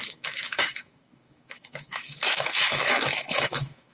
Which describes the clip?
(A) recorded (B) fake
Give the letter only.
B